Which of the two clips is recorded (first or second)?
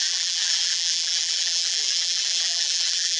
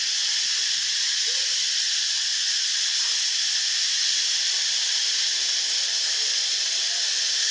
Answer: second